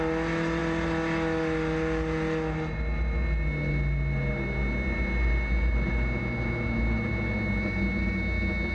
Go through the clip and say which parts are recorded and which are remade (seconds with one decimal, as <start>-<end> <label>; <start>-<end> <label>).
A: 0.0-8.7 recorded